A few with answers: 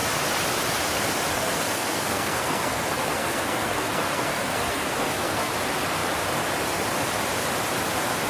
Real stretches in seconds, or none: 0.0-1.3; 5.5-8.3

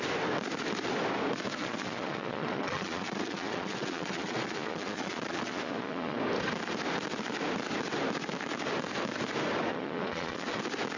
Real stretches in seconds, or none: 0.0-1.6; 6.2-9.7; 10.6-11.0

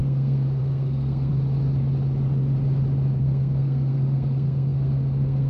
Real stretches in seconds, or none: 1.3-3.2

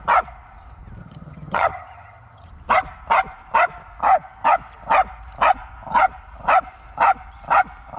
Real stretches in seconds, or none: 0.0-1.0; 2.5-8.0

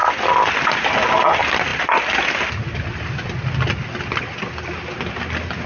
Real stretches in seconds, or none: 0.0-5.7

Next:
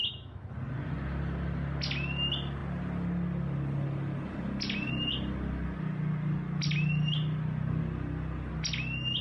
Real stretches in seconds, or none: 0.5-9.2